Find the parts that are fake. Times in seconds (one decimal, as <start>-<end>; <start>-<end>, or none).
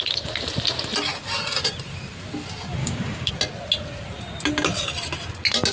2.8-3.3